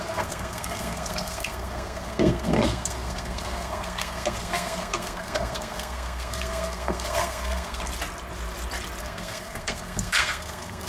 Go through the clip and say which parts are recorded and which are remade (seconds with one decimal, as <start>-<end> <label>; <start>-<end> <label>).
0.0-7.9 remade; 7.9-9.0 recorded; 9.0-10.9 remade